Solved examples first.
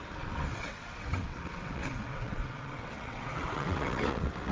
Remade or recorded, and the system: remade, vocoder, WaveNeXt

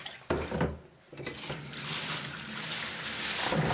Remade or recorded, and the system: recorded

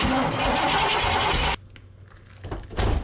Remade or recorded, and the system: recorded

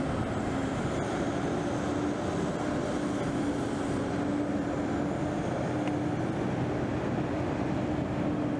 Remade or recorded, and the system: recorded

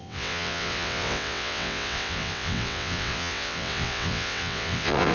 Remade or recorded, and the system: remade, vocoder, WaveNeXt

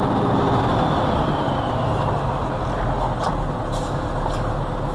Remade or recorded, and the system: recorded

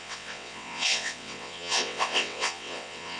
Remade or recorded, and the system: remade, vocoder, WaveNeXt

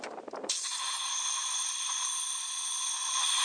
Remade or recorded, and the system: recorded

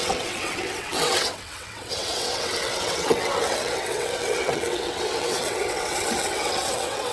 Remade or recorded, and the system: remade, vocoder, WaveNeXt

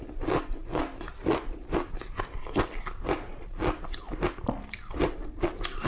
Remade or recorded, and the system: recorded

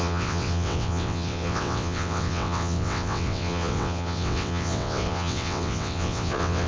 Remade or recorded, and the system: remade, vocoder, WaveNeXt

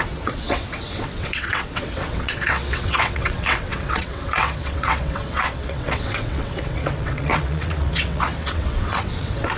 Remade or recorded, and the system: remade, vocoder, WaveNeXt